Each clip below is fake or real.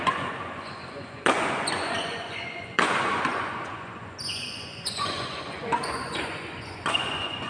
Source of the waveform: fake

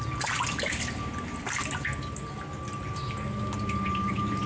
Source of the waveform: real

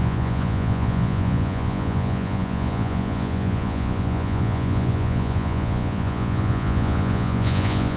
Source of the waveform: fake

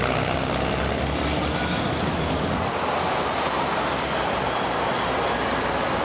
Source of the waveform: real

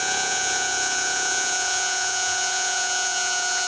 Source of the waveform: fake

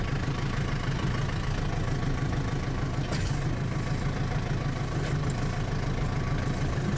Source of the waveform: real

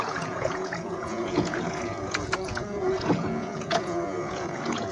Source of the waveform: fake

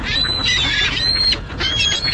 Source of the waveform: fake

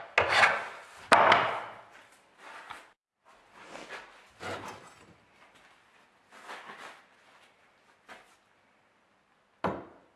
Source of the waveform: real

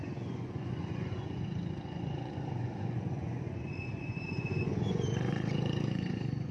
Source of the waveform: fake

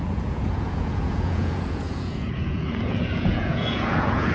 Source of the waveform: fake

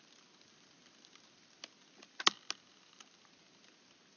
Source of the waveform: real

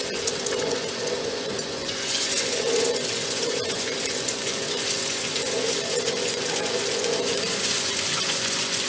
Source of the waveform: fake